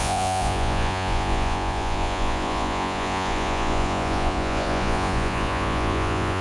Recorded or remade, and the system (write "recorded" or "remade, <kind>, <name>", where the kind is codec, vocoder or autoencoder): remade, vocoder, Vocos